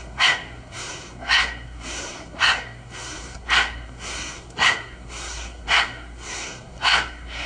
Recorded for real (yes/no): no